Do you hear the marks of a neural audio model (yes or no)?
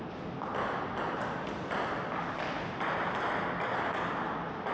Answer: no